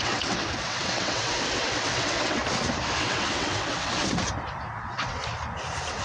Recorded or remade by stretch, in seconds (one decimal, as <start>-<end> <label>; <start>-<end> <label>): 0.0-2.4 remade; 2.4-3.0 recorded; 3.0-4.0 remade; 4.0-4.8 recorded; 4.8-5.2 remade; 5.2-6.0 recorded